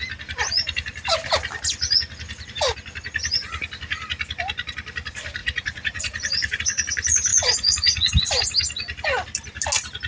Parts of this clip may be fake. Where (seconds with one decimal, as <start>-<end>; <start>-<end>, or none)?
5.4-6.6; 7.3-8.1